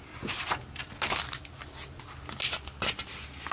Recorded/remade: recorded